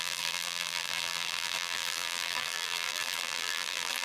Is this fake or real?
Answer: fake